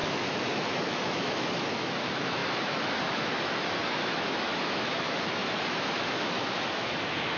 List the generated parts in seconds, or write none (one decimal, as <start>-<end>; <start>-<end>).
0.0-7.4